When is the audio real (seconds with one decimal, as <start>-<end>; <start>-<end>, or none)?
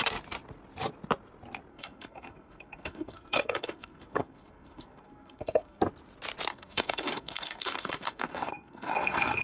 0.0-1.7; 5.8-6.5